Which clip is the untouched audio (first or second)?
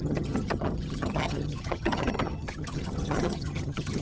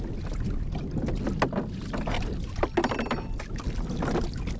second